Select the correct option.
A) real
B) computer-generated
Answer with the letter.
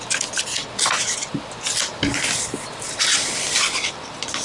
A